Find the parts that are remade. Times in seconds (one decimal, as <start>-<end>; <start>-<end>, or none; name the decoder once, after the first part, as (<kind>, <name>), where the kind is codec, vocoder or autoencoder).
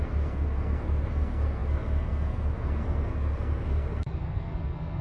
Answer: 0.0-5.0 (codec, SNAC)